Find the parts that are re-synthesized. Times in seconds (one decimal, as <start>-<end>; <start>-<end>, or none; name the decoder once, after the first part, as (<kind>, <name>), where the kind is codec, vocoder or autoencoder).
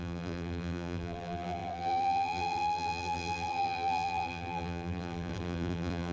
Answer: 0.0-6.1 (vocoder, BigVGAN v2)